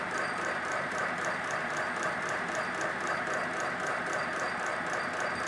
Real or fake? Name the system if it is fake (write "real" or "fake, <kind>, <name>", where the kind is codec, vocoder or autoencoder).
fake, vocoder, BigVGAN v2